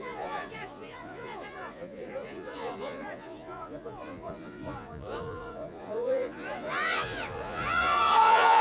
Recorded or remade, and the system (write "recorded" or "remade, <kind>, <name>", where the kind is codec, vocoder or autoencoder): remade, vocoder, Vocos